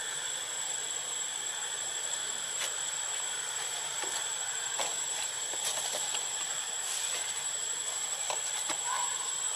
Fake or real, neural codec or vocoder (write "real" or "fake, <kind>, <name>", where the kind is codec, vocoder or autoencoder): real